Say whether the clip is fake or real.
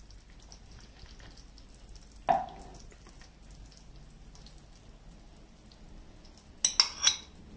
real